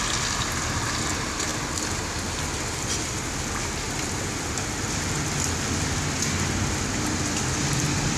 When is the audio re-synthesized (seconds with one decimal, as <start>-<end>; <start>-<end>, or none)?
none